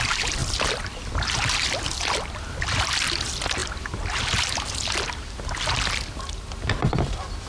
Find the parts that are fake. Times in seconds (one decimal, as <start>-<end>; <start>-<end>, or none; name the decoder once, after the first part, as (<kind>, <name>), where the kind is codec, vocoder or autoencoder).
0.0-3.6 (vocoder, BigVGAN v2); 6.9-7.5